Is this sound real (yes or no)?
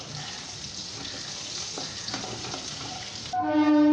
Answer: yes